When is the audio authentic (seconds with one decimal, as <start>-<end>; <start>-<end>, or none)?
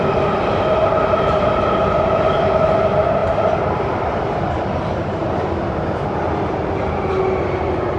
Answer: 0.0-8.0